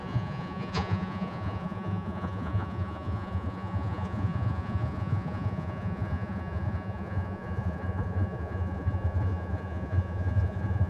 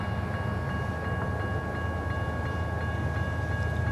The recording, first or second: second